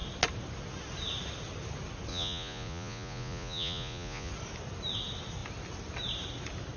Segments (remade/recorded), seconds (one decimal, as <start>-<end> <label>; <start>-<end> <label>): 0.0-2.1 recorded; 2.1-4.3 remade; 4.3-6.8 recorded